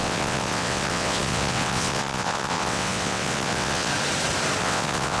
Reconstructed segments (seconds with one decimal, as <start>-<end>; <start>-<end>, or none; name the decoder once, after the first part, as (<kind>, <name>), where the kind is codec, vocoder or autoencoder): 0.0-3.9 (vocoder, WaveNeXt); 4.6-5.2